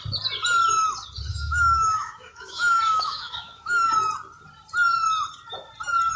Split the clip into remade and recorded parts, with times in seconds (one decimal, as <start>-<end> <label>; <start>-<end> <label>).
0.0-1.3 recorded; 1.3-3.9 remade; 3.9-6.2 recorded